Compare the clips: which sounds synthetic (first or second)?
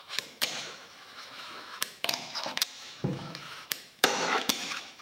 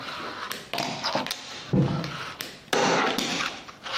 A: first